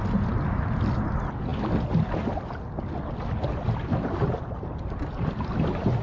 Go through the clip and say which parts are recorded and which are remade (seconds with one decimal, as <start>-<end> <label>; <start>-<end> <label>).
0.0-6.0 recorded